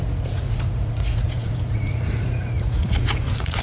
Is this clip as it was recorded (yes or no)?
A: no